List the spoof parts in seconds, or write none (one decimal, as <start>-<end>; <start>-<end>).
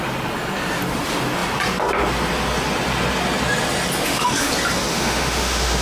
4.0-4.5; 4.9-5.8